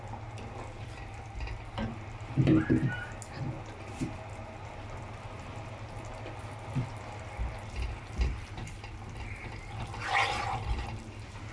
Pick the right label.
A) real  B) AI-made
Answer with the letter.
A